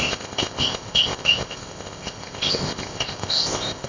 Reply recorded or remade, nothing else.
remade